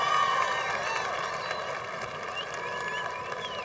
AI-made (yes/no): no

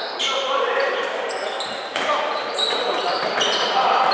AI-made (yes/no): yes